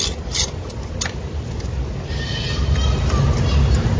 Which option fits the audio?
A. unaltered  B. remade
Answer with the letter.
A